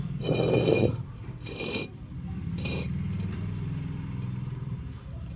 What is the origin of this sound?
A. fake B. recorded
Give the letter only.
A